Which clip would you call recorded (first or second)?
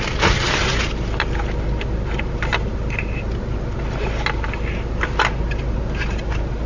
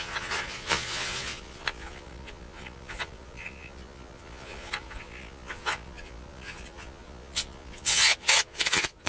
first